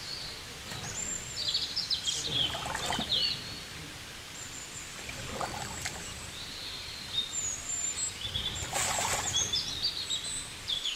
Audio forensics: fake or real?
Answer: fake